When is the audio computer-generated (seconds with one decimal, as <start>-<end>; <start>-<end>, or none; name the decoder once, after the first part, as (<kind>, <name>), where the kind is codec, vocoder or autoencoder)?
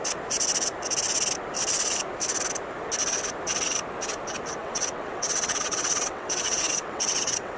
4.6-7.6 (vocoder, WaveNeXt)